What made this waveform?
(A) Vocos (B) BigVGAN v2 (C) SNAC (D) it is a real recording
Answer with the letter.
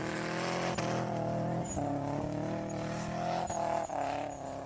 D